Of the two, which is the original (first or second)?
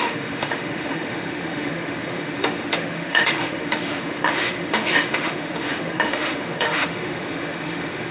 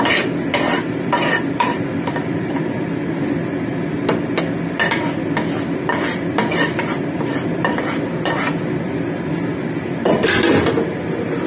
second